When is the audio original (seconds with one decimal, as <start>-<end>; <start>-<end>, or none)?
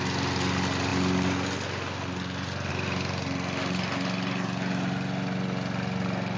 0.0-6.4